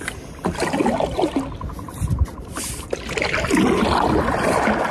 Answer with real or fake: real